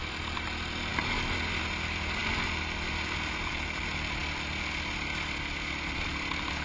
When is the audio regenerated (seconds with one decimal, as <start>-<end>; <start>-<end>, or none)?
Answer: none